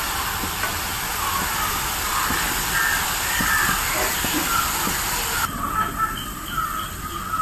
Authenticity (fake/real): real